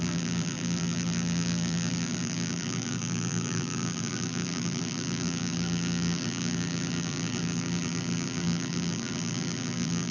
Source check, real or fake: fake